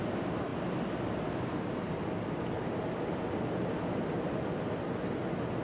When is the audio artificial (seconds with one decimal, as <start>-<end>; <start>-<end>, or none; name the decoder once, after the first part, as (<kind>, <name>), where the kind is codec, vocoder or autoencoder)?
none